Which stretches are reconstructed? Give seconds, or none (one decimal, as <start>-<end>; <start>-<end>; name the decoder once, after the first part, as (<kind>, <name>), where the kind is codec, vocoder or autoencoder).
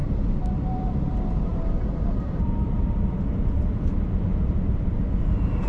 0.0-5.7 (vocoder, BigVGAN v2)